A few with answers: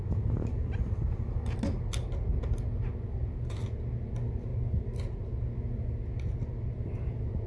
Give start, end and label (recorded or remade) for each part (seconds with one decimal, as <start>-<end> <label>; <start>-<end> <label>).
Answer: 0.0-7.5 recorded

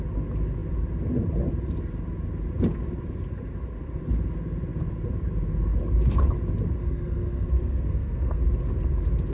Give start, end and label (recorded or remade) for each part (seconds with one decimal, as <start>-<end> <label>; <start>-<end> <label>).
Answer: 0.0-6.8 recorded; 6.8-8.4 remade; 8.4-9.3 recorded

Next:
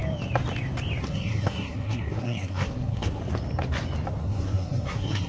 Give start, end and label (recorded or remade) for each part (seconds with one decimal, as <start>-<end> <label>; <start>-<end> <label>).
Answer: 0.0-1.0 recorded; 1.0-3.2 remade; 3.2-4.2 recorded; 4.2-5.3 remade